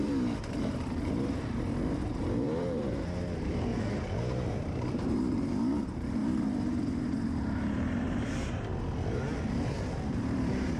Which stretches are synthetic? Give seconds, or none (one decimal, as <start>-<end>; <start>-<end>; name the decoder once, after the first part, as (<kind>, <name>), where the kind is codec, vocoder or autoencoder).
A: 0.0-3.7 (vocoder, BigVGAN v2); 4.5-8.7; 9.9-10.8